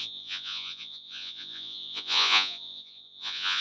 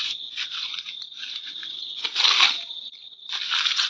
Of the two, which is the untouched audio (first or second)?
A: second